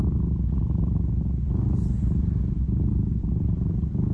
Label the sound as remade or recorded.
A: recorded